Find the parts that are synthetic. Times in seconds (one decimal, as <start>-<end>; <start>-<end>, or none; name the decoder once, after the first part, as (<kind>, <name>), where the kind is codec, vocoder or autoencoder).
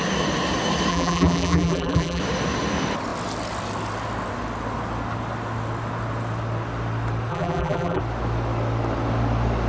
0.9-2.2 (vocoder, BigVGAN v2); 7.3-8.0